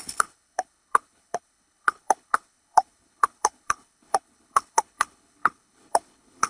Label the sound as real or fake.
fake